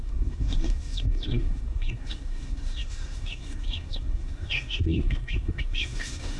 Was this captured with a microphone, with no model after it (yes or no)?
no